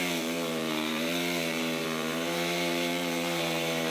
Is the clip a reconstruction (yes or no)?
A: yes